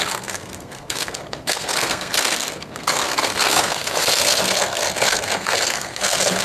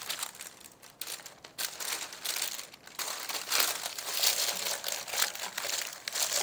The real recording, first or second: second